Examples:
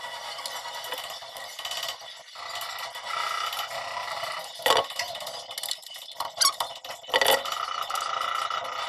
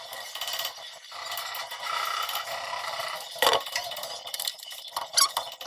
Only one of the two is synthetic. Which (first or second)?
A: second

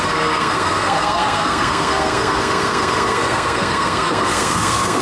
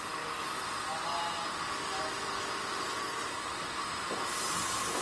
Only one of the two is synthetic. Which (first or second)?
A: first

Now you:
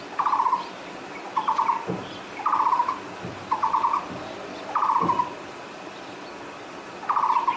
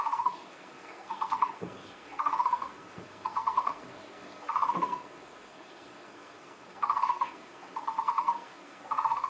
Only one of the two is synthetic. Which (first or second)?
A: second